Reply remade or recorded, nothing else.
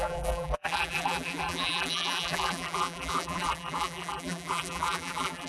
remade